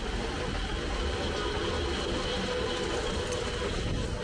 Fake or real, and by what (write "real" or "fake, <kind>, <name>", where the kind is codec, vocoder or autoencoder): real